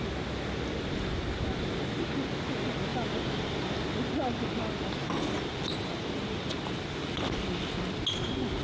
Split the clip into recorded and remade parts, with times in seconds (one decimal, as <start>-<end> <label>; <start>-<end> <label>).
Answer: 0.0-2.9 recorded; 2.9-3.5 remade; 3.5-5.0 recorded; 5.0-6.5 remade; 6.5-8.6 recorded